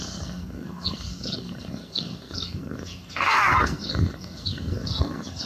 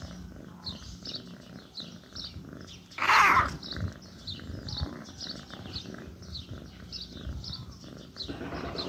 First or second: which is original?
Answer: second